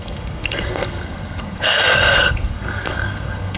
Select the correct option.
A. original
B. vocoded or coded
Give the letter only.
B